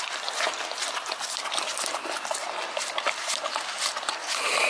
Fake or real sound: real